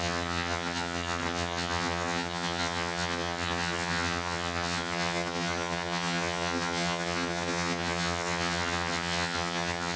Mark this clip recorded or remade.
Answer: remade